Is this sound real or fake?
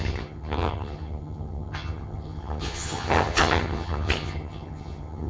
fake